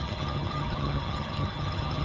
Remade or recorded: remade